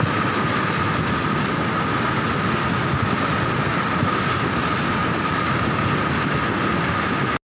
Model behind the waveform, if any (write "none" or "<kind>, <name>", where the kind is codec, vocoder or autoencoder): none